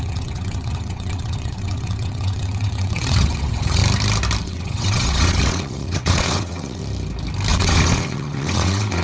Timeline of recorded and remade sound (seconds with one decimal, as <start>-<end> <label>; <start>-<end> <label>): 0.0-3.8 remade; 3.8-4.4 recorded; 4.4-6.8 remade; 6.8-7.5 recorded; 7.5-9.0 remade